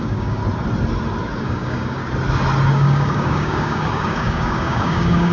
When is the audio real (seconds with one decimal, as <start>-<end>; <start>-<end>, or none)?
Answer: 0.4-1.4; 2.0-2.7